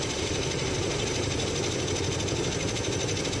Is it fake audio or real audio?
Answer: real